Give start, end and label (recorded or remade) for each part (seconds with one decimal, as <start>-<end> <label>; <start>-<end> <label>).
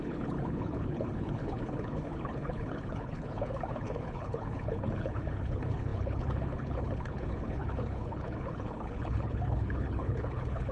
0.0-10.7 remade